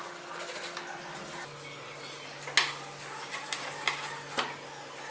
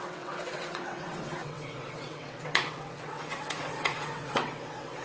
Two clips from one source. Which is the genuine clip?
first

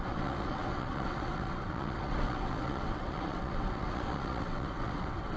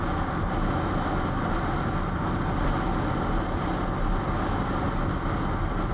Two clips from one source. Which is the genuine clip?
second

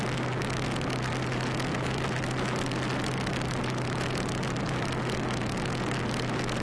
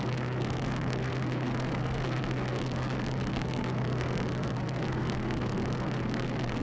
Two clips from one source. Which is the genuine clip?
first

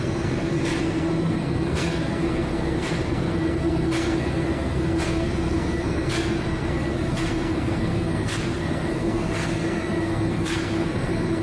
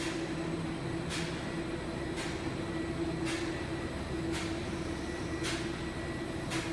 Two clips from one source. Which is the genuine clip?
second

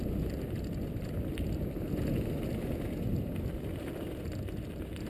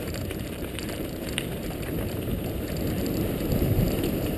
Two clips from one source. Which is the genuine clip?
first